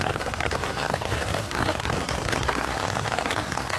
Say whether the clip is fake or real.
fake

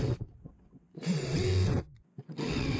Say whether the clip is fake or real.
fake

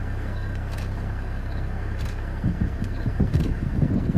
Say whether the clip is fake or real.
fake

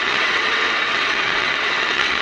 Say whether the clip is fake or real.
fake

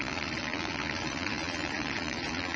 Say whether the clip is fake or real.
fake